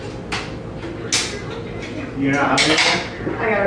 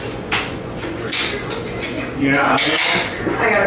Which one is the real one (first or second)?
first